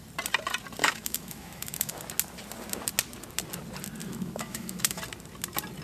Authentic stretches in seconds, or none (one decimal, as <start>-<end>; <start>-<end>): 0.0-0.8; 2.0-4.0; 5.0-5.8

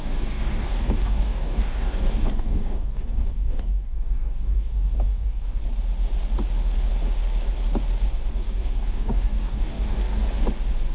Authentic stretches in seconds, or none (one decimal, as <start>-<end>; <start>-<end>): 5.6-8.3; 10.2-10.9

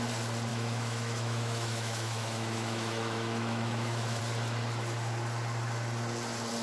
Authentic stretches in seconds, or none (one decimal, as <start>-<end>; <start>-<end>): 0.0-0.5; 4.2-6.6

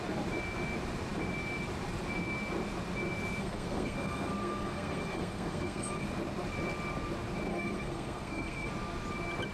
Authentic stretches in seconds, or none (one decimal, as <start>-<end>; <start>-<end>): 0.0-3.4; 5.9-7.5; 8.7-9.5

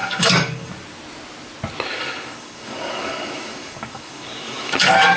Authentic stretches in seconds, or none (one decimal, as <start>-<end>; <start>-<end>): 0.7-1.9

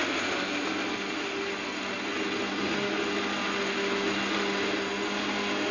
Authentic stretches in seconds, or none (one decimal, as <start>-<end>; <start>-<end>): 0.0-5.7

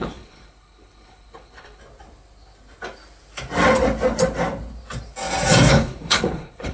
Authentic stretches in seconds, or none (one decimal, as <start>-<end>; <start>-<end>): 1.8-5.7

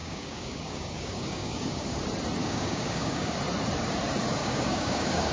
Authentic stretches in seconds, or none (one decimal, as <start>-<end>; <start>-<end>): 2.0-2.4; 3.4-4.4